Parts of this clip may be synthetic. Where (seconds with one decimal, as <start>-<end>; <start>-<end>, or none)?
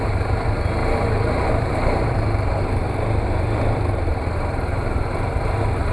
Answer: 0.0-0.8; 1.5-5.9